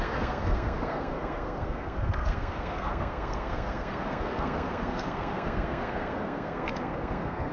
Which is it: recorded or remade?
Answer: remade